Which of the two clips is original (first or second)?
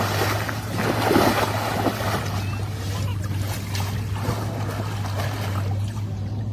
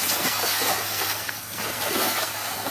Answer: first